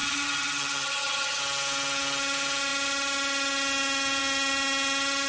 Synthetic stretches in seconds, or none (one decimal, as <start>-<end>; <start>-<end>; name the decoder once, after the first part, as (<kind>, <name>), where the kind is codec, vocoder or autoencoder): 0.0-1.4 (vocoder, HiFi-GAN)